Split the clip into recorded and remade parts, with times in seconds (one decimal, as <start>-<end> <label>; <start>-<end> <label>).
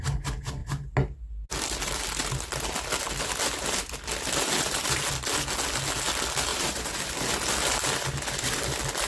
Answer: 0.0-6.5 recorded; 6.5-7.1 remade; 7.1-9.1 recorded